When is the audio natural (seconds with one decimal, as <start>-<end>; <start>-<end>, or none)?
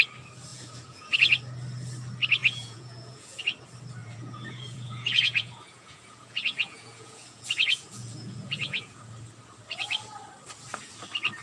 0.0-0.5; 1.4-2.4; 3.4-4.0; 9.0-11.4